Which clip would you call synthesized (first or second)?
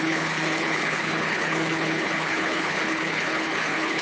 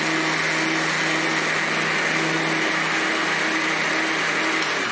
first